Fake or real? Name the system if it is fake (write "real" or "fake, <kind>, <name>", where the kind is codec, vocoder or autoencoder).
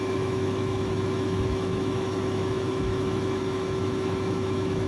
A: fake, autoencoder, DAC-VAE